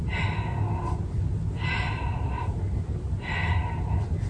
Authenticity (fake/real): real